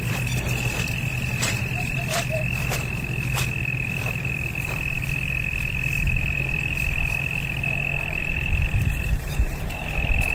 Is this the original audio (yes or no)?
no